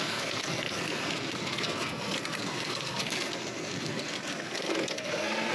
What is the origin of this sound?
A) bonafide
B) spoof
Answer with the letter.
B